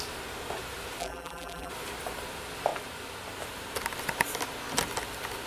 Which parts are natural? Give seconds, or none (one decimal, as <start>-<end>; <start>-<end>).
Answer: 0.0-1.0; 1.7-5.5